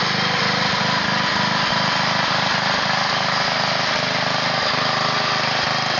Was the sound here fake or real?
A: real